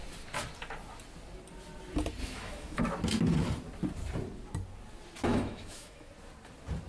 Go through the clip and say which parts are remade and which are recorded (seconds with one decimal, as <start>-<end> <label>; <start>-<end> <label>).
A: 0.0-2.2 recorded; 2.2-2.8 remade; 2.8-5.3 recorded; 5.3-6.1 remade; 6.1-6.9 recorded